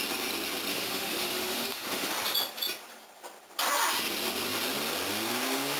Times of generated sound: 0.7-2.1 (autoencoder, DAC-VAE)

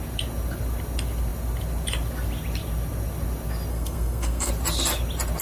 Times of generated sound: 3.7-4.5 (codec, SNAC)

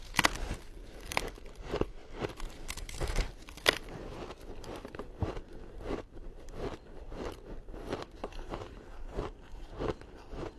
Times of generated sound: 0.0-10.6 (vocoder, BigVGAN v2)

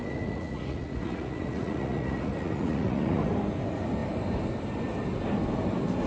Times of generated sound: 0.0-3.3 (vocoder, Vocos)

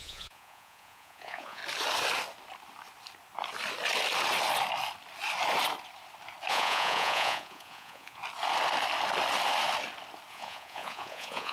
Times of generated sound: 0.0-1.6 (vocoder, Vocos); 6.5-8.2; 10.3-11.5